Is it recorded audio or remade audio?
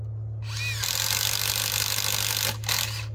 recorded